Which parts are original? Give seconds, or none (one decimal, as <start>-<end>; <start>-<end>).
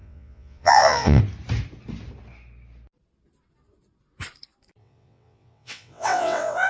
1.2-4.8